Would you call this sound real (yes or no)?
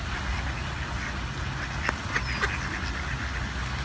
yes